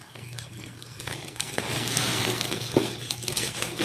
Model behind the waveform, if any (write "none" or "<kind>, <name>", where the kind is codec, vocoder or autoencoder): codec, SNAC